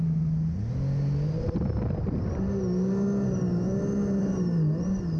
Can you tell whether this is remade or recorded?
recorded